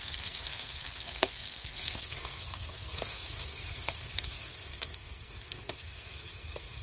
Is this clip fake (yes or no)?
yes